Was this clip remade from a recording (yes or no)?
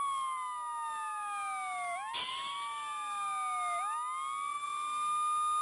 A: no